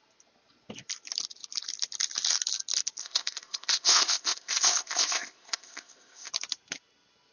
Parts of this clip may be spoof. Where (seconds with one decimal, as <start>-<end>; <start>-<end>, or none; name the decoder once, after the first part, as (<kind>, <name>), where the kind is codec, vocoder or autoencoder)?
3.0-6.3 (codec, ZipCodec)